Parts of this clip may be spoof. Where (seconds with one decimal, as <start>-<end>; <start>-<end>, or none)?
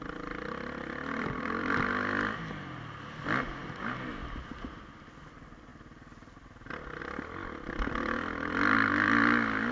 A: none